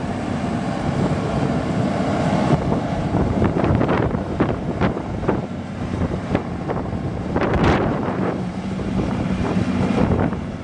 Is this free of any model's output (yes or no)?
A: no